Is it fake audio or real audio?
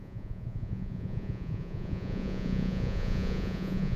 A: fake